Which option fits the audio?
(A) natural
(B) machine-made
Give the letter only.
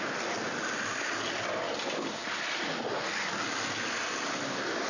A